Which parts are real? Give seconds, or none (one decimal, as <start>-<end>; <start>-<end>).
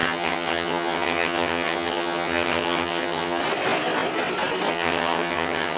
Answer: 3.4-4.7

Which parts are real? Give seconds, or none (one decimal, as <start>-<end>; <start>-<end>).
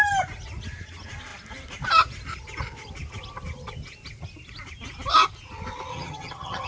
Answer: 0.0-5.9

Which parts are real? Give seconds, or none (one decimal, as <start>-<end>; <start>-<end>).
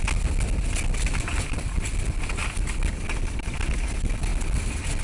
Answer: 0.0-5.0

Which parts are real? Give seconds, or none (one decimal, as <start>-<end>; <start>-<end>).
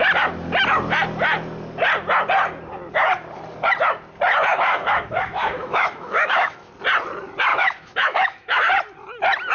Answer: 0.0-4.5; 6.7-7.5; 8.7-9.5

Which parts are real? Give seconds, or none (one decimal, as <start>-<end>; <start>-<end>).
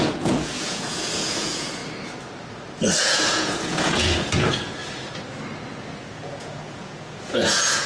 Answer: 1.8-3.0; 4.8-5.7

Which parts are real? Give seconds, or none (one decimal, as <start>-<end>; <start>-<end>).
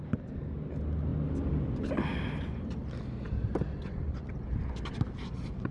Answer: 0.0-3.7; 4.3-5.7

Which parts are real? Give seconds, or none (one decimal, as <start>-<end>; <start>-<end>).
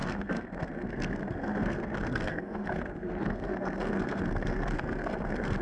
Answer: none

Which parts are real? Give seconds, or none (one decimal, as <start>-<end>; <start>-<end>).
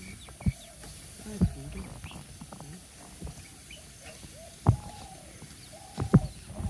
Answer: 0.0-0.8; 1.4-3.5; 5.0-6.7